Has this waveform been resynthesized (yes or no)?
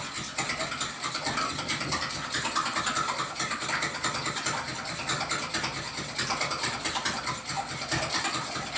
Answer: no